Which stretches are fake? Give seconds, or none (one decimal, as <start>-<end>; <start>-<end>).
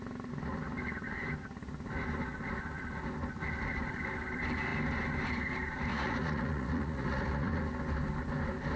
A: 5.9-7.6